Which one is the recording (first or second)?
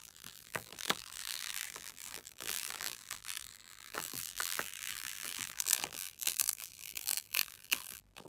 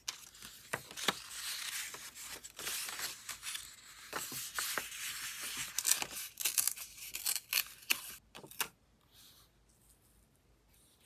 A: second